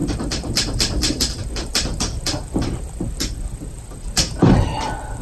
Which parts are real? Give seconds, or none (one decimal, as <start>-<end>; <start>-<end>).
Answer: 3.0-5.2